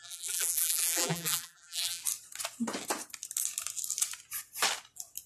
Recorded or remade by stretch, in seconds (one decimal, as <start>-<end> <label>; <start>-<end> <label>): 0.0-2.0 remade; 2.0-5.3 recorded